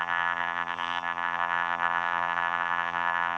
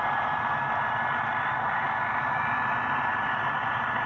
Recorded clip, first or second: second